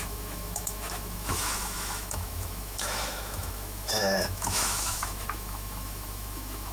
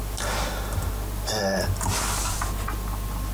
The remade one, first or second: first